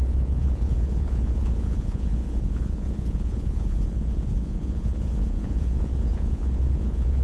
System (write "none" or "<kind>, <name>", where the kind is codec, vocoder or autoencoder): vocoder, Vocos